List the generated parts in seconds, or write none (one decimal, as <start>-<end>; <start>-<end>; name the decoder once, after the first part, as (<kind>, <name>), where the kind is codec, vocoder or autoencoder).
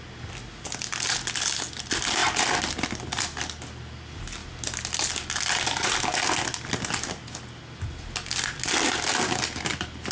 none